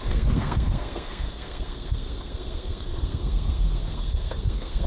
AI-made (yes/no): yes